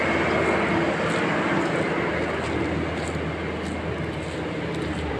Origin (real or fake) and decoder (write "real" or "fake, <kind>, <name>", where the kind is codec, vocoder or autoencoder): real